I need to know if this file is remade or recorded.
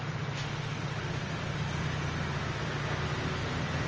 recorded